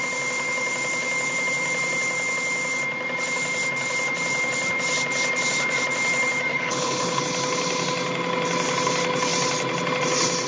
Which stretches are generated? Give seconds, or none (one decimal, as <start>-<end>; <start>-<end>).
6.5-7.2